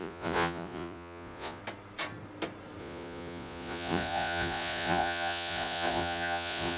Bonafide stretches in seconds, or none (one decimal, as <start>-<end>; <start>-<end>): 1.6-2.8

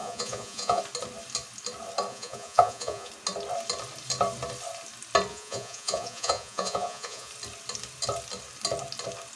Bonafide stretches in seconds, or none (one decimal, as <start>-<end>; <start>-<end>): 0.8-2.1; 3.1-5.3; 7.3-9.4

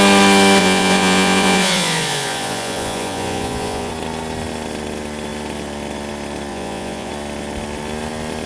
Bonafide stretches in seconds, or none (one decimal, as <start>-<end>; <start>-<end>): 0.0-0.6; 3.9-6.5; 7.1-8.5

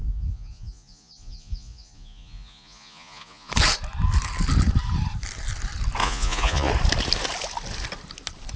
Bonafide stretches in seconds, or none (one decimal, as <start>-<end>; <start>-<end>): 3.5-6.0; 6.7-8.6